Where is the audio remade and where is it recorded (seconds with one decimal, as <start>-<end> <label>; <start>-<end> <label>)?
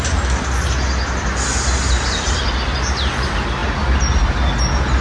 0.0-5.0 recorded